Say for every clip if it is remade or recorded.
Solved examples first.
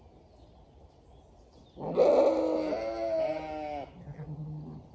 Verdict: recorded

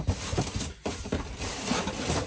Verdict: recorded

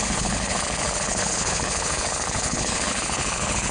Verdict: remade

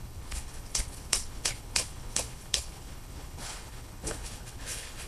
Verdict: remade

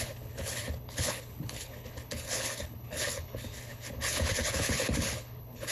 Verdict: remade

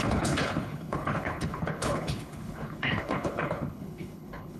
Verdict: remade